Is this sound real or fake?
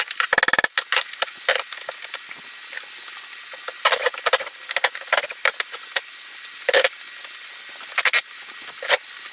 real